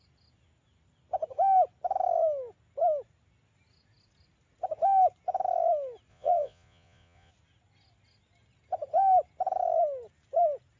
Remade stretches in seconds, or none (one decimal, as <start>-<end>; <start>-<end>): 6.1-7.3